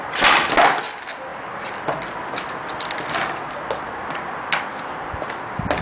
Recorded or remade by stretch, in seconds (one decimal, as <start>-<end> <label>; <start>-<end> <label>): 0.0-5.8 recorded